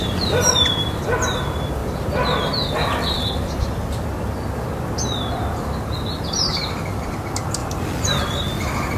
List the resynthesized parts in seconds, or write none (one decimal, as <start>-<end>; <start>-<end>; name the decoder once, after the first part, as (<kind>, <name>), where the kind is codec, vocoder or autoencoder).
0.0-0.5 (vocoder, BigVGAN v2)